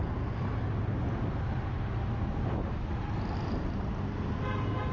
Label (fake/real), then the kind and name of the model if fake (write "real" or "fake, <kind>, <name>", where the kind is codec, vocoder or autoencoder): real